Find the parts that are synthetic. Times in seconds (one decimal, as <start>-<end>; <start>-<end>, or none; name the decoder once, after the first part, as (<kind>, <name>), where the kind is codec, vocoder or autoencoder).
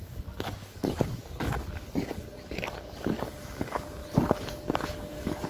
0.0-4.0 (codec, DAC); 4.5-5.5